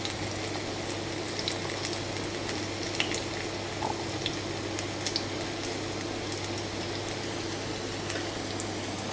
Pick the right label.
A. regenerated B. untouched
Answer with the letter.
B